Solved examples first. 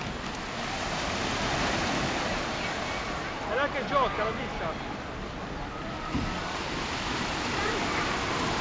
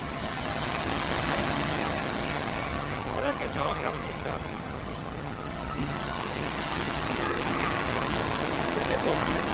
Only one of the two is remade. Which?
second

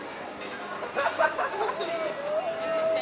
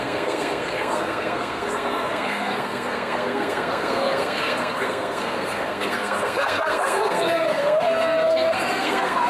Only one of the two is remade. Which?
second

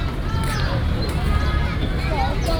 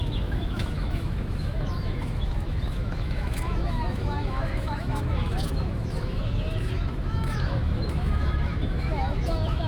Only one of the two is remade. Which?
second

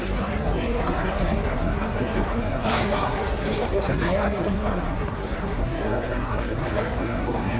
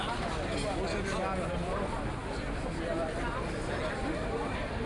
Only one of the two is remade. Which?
first